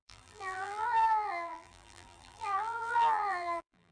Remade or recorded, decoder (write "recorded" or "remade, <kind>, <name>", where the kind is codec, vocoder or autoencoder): remade, vocoder, BigVGAN v2